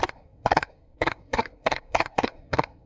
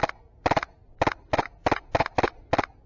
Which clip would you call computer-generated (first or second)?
first